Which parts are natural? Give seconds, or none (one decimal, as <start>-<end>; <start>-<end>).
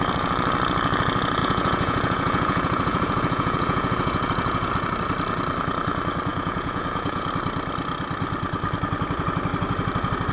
0.0-1.4; 4.7-6.3; 7.3-10.3